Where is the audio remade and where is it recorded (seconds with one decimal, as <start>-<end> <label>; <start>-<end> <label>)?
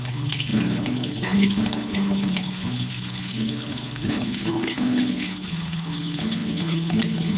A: 0.0-7.4 remade